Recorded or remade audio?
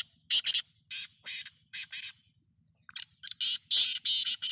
recorded